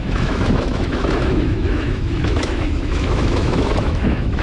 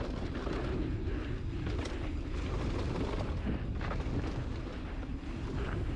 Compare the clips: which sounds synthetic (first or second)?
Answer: first